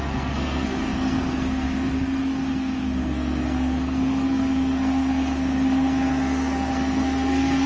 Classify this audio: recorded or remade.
remade